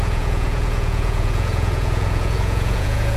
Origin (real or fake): fake